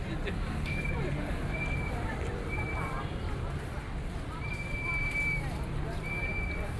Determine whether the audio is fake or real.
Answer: fake